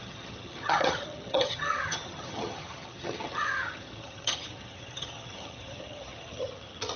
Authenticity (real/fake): fake